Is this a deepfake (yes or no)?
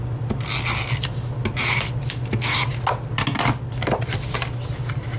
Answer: no